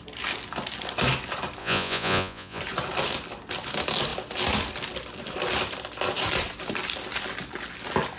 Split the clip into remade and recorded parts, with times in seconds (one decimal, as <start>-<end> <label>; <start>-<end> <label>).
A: 0.0-1.6 recorded; 1.6-2.6 remade; 2.6-8.2 recorded